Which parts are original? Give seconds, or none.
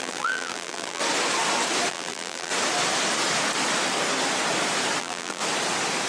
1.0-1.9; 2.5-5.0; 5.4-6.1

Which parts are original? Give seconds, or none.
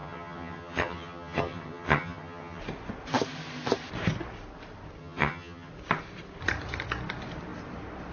2.6-5.0; 5.7-8.1